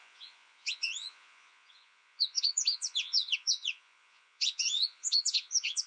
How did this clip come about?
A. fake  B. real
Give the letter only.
A